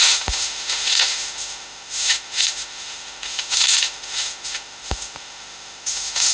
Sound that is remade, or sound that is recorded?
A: remade